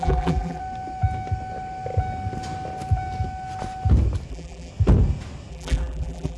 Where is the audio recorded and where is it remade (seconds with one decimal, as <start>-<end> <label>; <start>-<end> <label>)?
0.0-0.6 remade; 0.6-4.3 recorded; 4.3-4.7 remade; 4.7-5.5 recorded; 5.5-6.4 remade